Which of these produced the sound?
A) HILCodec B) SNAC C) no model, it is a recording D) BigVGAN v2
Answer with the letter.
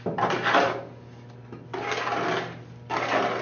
C